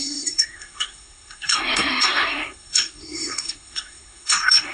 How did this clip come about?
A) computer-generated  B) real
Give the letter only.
A